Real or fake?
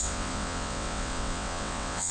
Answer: fake